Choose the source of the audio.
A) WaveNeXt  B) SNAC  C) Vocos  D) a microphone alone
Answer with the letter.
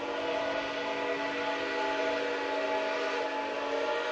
D